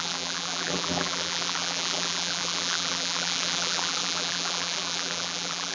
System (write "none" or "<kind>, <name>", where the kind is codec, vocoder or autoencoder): vocoder, BigVGAN v2